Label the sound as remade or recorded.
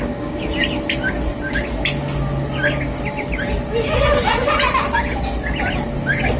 recorded